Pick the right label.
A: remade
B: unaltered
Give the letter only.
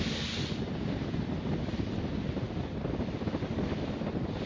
B